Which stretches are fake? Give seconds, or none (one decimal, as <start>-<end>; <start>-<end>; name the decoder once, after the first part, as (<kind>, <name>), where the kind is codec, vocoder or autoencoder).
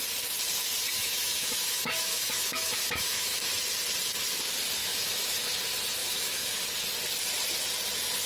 1.0-3.5 (autoencoder, DAC-VAE); 4.8-5.5; 6.0-6.6